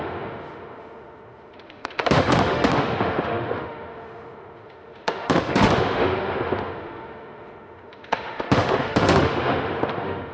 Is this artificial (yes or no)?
yes